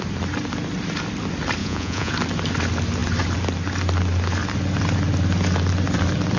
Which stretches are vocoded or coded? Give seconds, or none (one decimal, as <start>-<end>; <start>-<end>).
1.6-2.1

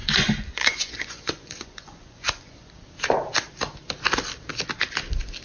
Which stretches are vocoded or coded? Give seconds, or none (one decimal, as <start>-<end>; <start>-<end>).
0.0-2.7

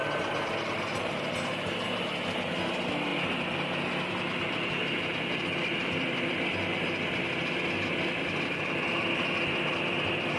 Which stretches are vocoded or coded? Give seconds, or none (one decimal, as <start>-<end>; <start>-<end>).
none

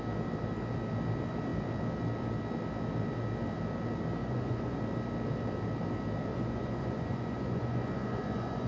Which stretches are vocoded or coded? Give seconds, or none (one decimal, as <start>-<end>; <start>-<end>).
4.2-4.8; 6.3-8.7

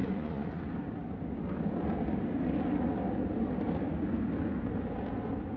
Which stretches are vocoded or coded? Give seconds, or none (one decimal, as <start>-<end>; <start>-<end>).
0.0-0.6

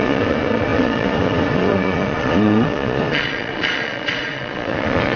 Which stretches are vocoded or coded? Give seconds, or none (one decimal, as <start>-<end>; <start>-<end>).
0.0-5.2